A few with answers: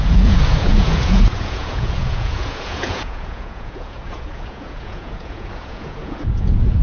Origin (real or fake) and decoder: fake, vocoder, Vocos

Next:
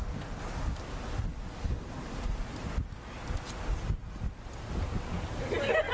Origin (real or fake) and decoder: real